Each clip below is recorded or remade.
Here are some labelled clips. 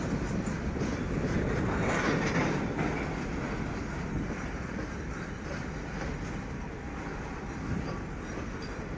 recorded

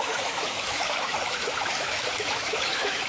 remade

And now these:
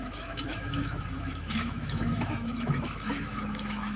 remade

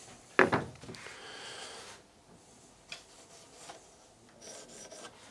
recorded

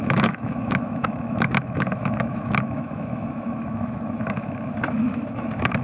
remade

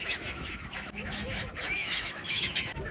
remade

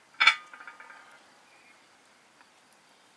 recorded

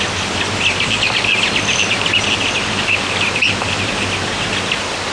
recorded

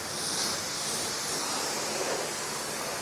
recorded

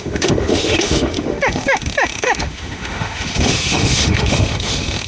remade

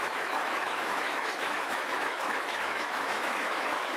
remade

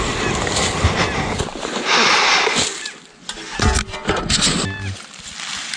recorded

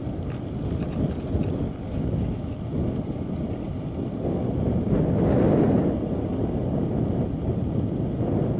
recorded